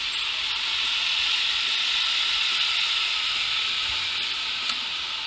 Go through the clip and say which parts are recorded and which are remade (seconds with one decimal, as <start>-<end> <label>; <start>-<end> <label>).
0.0-5.3 recorded